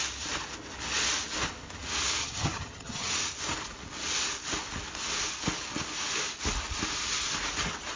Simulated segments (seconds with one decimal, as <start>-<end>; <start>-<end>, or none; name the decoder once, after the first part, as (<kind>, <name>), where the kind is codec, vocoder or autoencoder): 2.2-3.1 (vocoder, HiFi-GAN)